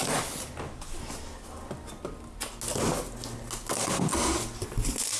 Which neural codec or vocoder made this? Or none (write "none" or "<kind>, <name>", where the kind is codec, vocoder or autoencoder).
none